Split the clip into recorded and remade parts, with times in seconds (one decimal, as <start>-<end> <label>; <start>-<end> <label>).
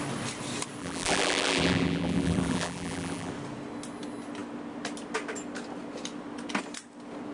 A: 0.0-0.8 recorded; 0.8-3.3 remade; 3.3-7.3 recorded